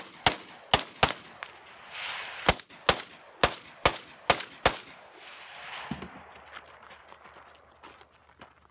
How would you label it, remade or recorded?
recorded